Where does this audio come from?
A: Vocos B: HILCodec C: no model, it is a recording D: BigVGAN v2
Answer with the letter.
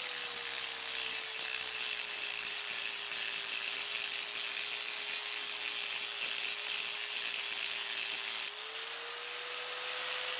C